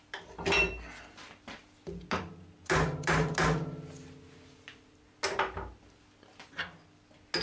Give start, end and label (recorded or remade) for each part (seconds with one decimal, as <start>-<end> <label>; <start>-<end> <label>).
0.0-7.4 recorded